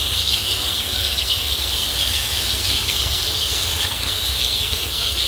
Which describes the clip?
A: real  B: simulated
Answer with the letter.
B